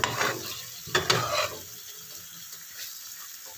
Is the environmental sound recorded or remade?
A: recorded